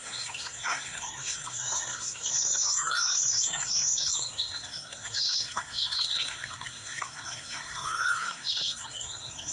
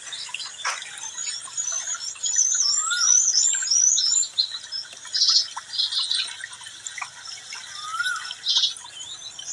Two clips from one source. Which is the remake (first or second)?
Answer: first